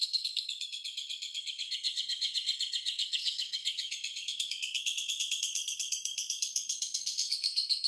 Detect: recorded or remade remade